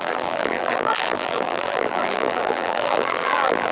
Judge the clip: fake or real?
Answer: fake